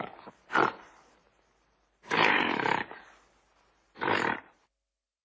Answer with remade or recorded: remade